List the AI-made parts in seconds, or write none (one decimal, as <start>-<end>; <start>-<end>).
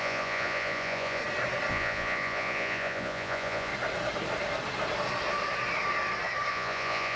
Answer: 0.0-1.2; 1.7-3.7; 6.5-7.2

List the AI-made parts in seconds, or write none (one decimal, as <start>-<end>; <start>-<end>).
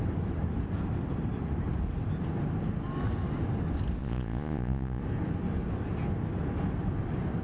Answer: 4.0-5.0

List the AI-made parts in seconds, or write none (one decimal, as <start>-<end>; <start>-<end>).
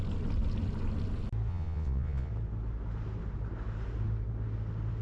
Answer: 1.5-2.3